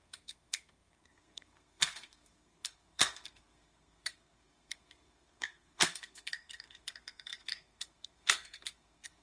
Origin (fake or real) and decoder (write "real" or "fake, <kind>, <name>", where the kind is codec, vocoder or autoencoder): fake, codec, SNAC